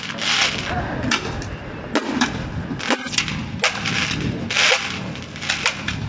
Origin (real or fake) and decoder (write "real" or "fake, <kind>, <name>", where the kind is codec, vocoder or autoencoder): real